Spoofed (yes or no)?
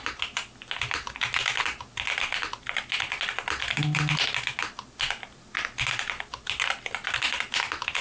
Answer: no